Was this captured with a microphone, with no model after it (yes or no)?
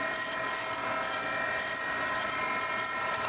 yes